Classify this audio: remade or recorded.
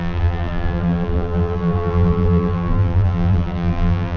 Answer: remade